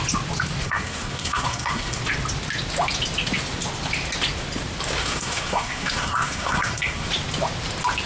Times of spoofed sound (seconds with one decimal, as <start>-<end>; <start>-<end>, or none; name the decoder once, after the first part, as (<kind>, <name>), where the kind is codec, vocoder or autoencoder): 0.6-2.0 (codec, SNAC); 5.0-7.1